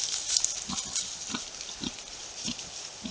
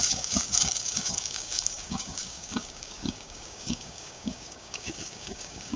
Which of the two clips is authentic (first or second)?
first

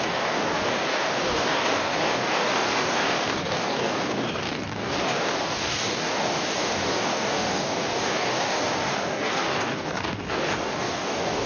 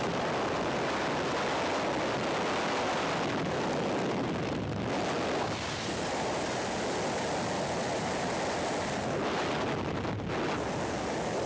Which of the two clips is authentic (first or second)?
second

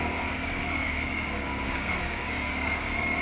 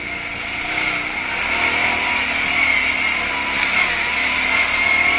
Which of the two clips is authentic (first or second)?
second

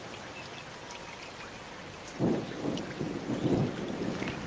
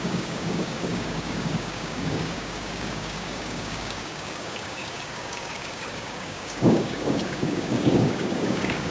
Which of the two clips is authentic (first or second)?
first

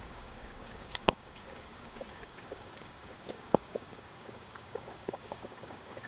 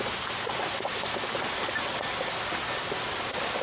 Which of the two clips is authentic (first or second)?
second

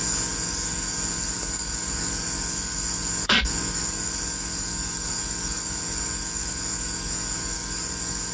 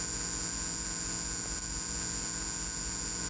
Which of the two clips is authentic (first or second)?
second